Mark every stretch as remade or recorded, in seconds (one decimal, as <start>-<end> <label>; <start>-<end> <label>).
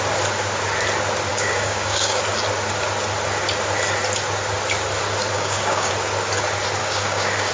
0.0-1.3 recorded; 1.3-2.2 remade; 2.2-5.3 recorded; 5.3-5.9 remade; 5.9-6.8 recorded; 6.8-7.5 remade